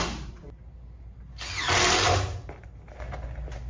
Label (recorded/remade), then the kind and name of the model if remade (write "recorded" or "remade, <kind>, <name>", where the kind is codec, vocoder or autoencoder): recorded